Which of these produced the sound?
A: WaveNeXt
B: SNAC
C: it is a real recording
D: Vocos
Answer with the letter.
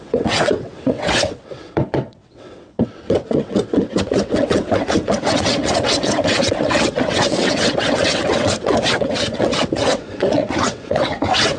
A